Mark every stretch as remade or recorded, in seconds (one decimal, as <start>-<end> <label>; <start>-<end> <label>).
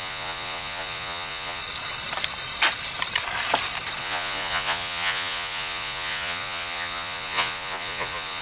0.0-1.6 remade; 1.6-4.0 recorded; 4.0-8.4 remade